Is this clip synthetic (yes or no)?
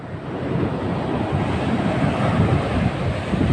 no